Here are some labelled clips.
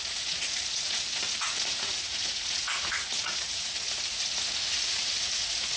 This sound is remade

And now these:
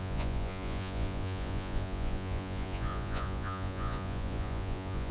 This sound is remade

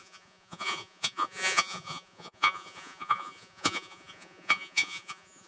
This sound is remade